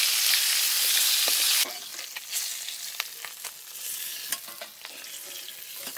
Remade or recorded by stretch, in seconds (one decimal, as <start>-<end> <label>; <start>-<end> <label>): 0.0-6.0 recorded